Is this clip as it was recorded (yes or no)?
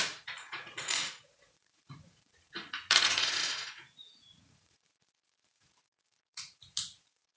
no